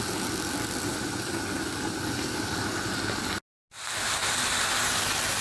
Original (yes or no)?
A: yes